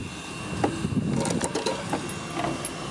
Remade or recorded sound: recorded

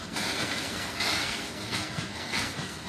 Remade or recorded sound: remade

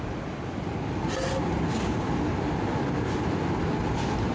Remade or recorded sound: recorded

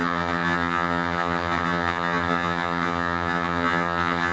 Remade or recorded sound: remade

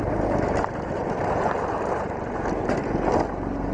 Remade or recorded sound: recorded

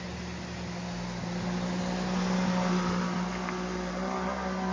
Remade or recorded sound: recorded